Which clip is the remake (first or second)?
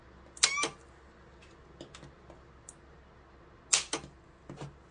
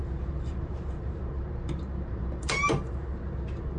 second